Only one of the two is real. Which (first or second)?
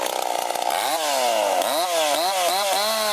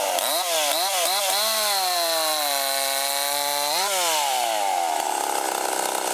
first